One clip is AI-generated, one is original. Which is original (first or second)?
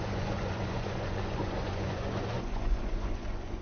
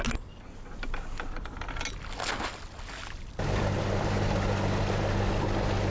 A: second